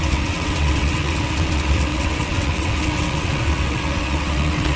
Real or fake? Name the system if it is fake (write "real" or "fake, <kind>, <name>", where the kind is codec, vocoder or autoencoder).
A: fake, vocoder, WaveNeXt